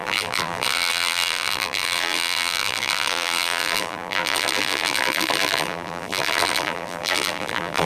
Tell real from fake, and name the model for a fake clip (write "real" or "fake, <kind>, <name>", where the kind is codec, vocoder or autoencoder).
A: fake, vocoder, BigVGAN v2